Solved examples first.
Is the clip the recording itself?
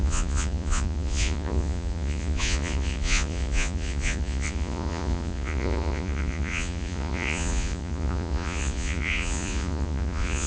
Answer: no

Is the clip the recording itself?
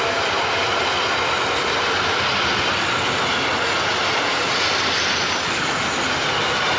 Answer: yes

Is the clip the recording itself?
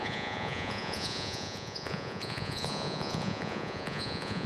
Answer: no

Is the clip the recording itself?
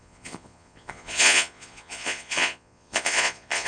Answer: no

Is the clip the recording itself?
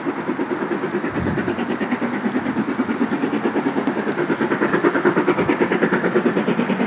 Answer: yes